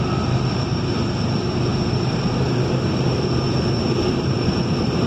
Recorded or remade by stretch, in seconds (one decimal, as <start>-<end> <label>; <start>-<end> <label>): 0.0-5.1 remade